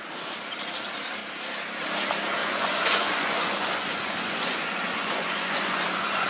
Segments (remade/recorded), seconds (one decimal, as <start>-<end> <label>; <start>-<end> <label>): 0.0-2.4 recorded; 2.4-6.3 remade

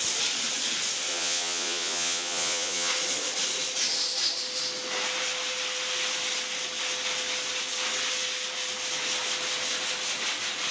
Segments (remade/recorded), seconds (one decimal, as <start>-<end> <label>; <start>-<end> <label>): 0.0-1.1 recorded; 1.1-2.9 remade; 2.9-10.7 recorded

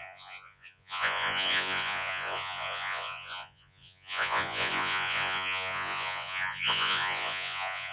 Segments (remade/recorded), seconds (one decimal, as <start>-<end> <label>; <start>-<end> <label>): 0.0-7.9 remade